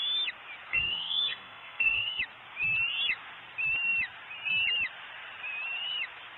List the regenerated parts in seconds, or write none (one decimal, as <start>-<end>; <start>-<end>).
0.7-2.2